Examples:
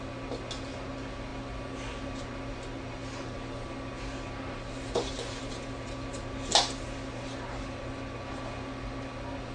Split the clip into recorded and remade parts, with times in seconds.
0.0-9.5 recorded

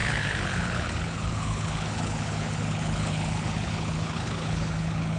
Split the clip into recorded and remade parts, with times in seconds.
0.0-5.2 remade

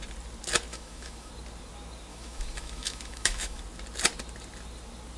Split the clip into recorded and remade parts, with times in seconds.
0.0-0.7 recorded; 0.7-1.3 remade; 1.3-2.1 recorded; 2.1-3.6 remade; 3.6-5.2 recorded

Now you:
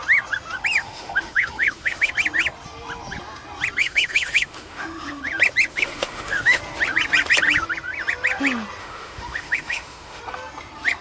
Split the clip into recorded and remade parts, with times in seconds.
0.0-0.8 recorded; 0.8-2.1 remade; 2.1-3.8 recorded; 3.8-5.2 remade; 5.2-5.7 recorded; 5.7-6.6 remade; 6.6-8.8 recorded; 8.8-10.2 remade; 10.2-11.0 recorded

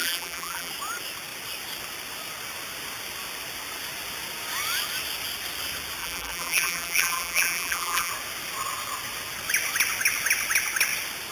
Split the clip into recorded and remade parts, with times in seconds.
0.0-0.7 remade; 0.7-6.0 recorded; 6.0-8.1 remade; 8.1-11.3 recorded

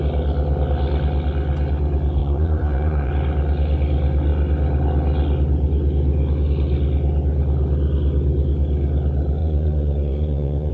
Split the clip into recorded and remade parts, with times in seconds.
0.0-2.2 recorded; 2.2-3.1 remade; 3.1-9.4 recorded; 9.4-10.7 remade

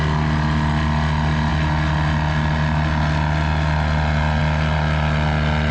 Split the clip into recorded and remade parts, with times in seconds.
0.0-5.7 recorded

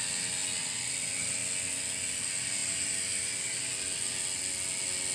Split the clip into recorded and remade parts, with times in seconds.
0.0-5.1 recorded